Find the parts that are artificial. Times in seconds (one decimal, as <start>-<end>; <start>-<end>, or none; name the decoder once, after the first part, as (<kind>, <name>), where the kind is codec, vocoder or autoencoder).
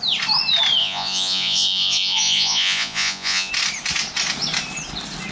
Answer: 0.8-3.5 (vocoder, Vocos)